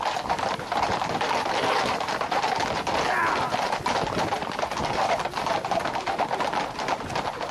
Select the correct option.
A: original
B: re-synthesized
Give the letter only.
A